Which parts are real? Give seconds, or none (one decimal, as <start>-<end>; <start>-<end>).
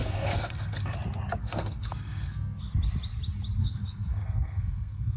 0.9-1.4; 2.6-3.6